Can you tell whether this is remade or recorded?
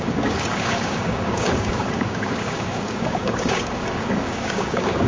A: remade